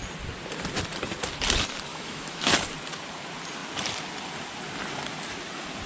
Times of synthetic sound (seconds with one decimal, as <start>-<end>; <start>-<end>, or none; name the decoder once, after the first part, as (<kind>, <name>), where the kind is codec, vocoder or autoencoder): 1.9-2.5 (autoencoder, DAC-VAE)